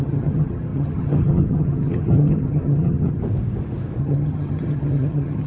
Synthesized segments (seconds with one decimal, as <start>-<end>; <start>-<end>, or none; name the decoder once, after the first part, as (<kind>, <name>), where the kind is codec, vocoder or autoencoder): 0.0-3.2 (vocoder, HiFi-GAN); 4.0-5.5